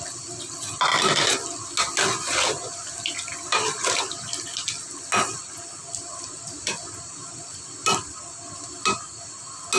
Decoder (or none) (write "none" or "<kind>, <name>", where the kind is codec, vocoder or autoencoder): none